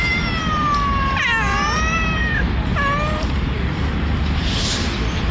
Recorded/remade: recorded